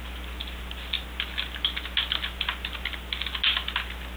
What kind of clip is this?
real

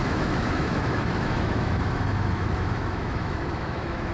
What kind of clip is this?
fake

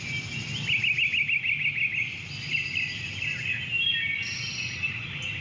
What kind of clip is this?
real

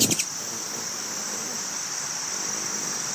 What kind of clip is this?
real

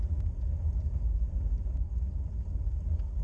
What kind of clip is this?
real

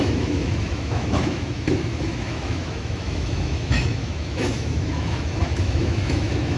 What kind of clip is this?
fake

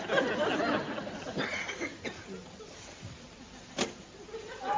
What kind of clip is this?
real